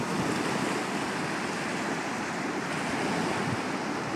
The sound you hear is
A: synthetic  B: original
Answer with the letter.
B